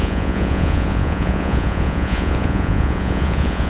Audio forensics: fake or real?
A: fake